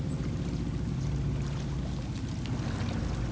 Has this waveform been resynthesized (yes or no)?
no